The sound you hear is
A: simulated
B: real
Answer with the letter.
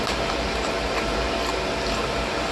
B